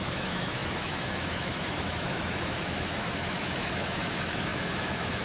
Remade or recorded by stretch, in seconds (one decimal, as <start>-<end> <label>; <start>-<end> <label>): 0.0-5.2 remade